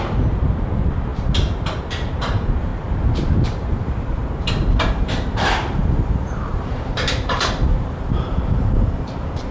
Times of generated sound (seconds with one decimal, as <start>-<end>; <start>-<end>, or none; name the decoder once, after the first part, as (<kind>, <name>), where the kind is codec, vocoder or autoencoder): 0.0-4.2 (vocoder, BigVGAN v2); 5.0-9.5